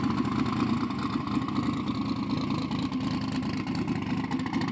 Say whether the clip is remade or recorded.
recorded